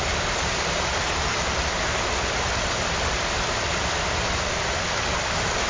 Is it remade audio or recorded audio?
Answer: recorded